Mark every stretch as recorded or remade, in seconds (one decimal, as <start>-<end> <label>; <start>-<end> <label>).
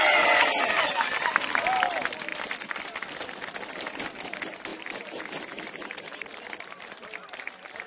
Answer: 0.0-7.9 recorded